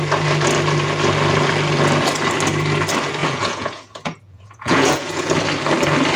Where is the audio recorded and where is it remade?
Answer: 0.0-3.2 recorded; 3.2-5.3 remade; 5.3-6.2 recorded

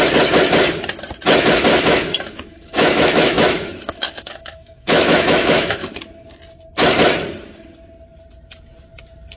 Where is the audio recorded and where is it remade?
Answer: 0.0-1.7 recorded; 1.7-6.0 remade; 6.0-9.4 recorded

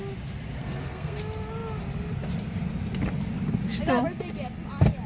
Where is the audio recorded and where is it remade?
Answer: 0.0-0.6 recorded; 0.6-1.2 remade; 1.2-5.1 recorded

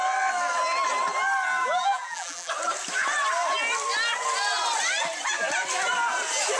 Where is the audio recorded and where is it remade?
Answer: 0.0-1.6 recorded; 1.6-2.5 remade; 2.5-6.6 recorded